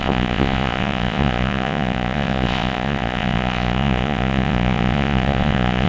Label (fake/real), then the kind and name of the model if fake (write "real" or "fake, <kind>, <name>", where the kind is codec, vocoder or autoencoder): fake, vocoder, Vocos